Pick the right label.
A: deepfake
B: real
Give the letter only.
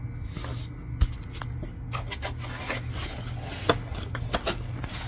B